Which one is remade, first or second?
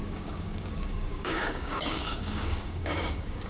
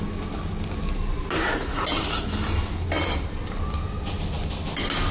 first